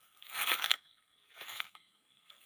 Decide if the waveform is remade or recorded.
remade